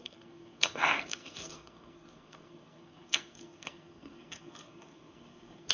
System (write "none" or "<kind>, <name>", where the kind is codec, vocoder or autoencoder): codec, SNAC